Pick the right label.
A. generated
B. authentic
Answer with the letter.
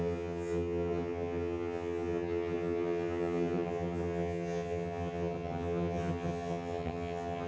A